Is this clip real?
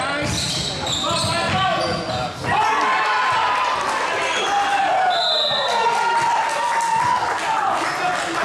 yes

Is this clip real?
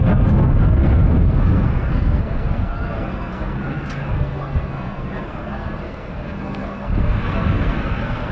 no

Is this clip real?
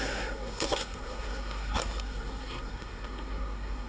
no